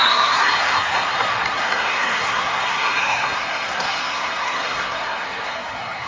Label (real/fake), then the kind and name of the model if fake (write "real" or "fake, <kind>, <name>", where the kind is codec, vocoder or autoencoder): fake, codec, SNAC